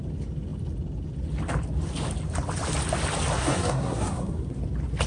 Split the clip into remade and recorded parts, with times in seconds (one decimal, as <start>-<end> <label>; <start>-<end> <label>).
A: 0.0-3.4 recorded; 3.4-4.6 remade; 4.6-5.1 recorded